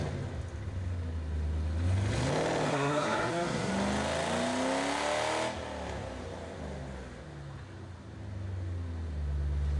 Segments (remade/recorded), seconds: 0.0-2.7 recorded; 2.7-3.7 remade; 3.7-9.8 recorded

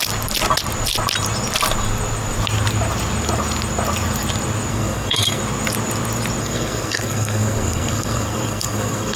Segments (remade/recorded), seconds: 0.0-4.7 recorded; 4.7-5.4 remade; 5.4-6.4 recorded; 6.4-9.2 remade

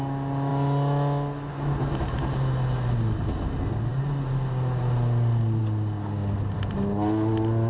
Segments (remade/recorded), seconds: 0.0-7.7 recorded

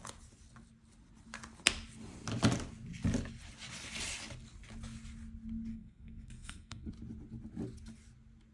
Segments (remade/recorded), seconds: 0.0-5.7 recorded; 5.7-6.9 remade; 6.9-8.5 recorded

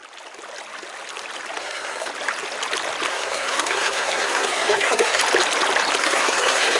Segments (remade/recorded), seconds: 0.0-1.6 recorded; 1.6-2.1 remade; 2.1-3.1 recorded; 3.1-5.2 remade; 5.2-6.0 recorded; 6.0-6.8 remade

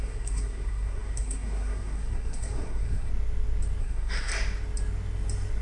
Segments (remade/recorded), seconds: 0.0-3.1 remade; 3.1-3.8 recorded; 3.8-4.3 remade; 4.3-5.6 recorded

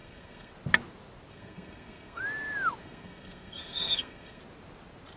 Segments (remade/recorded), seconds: 0.0-0.5 remade; 0.5-1.3 recorded; 1.3-2.2 remade; 2.2-2.8 recorded; 2.8-4.4 remade; 4.4-5.2 recorded

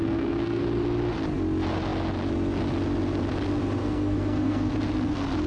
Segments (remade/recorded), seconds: 0.0-0.6 remade; 0.6-3.8 recorded; 3.8-4.7 remade; 4.7-5.5 recorded